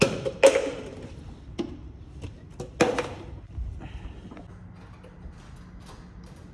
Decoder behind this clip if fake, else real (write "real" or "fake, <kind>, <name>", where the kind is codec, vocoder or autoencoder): real